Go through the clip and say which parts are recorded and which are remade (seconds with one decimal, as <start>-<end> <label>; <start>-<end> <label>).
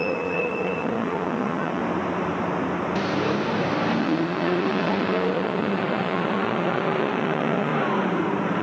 0.0-1.8 remade; 1.8-4.0 recorded; 4.0-7.7 remade; 7.7-8.6 recorded